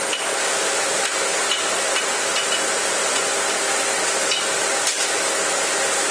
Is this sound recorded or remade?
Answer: recorded